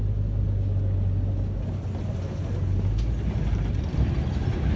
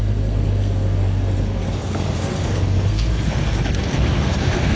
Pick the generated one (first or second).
second